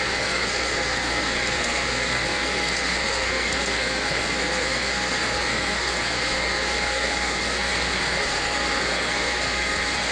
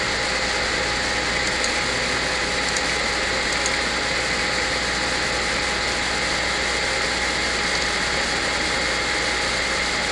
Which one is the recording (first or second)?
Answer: second